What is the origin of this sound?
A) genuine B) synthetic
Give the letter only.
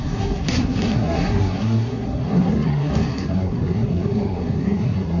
B